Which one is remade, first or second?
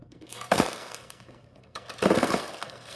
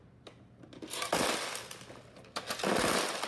first